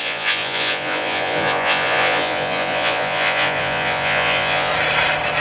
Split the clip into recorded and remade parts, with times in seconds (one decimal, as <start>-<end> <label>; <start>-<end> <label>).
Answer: 0.0-4.7 remade; 4.7-5.4 recorded